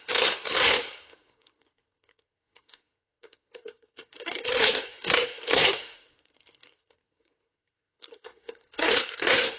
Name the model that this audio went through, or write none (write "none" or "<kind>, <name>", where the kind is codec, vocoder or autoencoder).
codec, SNAC